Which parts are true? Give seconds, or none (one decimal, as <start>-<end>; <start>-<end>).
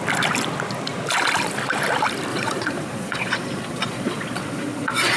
0.0-2.3